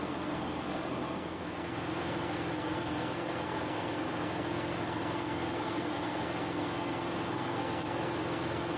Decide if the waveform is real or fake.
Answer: fake